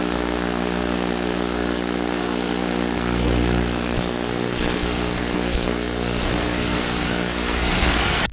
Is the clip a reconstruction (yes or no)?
yes